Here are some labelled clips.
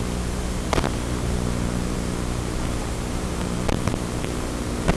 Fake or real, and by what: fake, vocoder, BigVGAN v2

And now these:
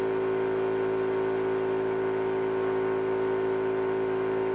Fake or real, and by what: real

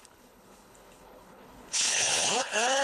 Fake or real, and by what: fake, codec, HILCodec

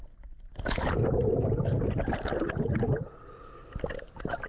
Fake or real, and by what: real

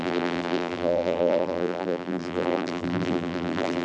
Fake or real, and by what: fake, vocoder, BigVGAN v2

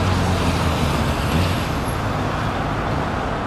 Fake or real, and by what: real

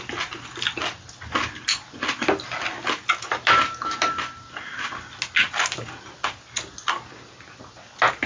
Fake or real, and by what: real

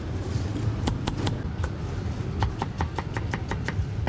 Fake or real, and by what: real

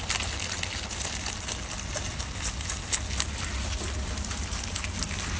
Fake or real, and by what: real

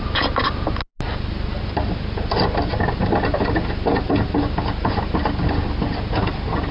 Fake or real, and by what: real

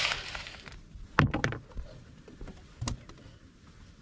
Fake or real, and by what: real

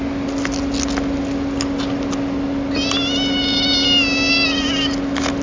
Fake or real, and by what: real